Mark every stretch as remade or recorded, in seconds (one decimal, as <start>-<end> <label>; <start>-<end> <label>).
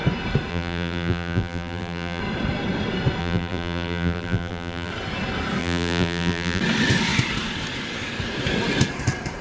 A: 0.0-0.5 recorded; 0.5-2.2 remade; 2.2-3.2 recorded; 3.2-4.9 remade; 4.9-5.6 recorded; 5.6-6.6 remade; 6.6-9.4 recorded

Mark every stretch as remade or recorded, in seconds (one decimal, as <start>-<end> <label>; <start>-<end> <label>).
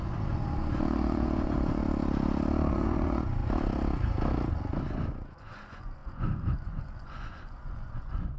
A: 0.0-1.8 remade; 1.8-2.7 recorded; 2.7-3.4 remade; 3.4-4.8 recorded; 4.8-8.4 remade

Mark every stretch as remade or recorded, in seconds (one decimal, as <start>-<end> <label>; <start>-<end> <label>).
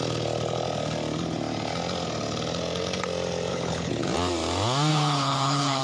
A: 0.0-3.5 recorded; 3.5-4.0 remade; 4.0-4.9 recorded; 4.9-5.8 remade